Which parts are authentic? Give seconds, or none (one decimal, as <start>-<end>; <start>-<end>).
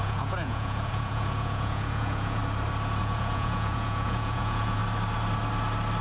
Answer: 2.4-3.0; 4.8-6.0